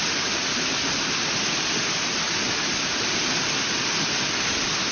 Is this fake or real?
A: real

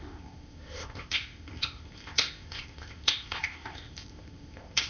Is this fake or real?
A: fake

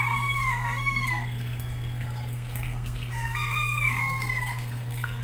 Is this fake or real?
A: fake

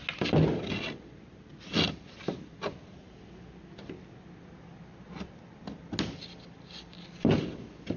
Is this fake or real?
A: real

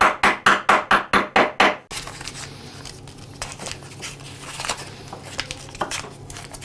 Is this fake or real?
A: real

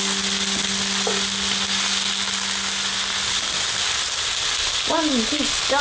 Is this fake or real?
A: real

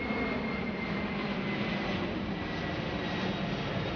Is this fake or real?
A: real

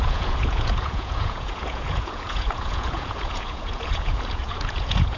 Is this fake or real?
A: fake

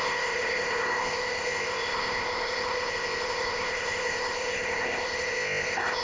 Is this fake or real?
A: fake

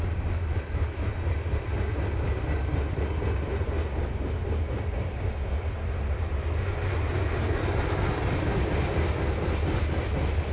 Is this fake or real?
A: real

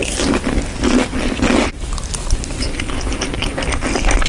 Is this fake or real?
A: real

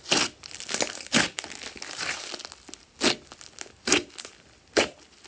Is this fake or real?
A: real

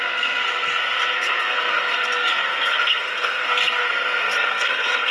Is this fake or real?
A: fake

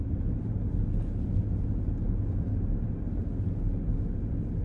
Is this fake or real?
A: real